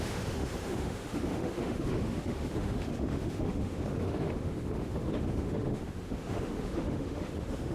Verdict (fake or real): fake